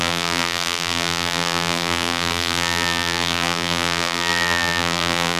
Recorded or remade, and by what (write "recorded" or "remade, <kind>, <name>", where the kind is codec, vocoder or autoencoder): remade, vocoder, BigVGAN v2